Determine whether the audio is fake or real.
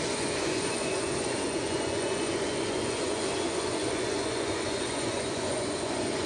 fake